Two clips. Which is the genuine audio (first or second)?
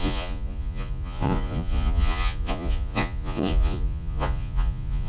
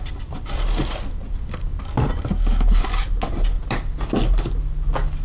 second